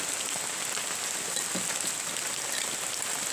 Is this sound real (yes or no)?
yes